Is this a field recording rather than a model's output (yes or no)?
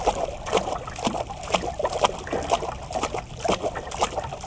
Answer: yes